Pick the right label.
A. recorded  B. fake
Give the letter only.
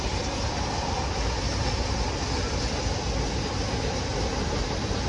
A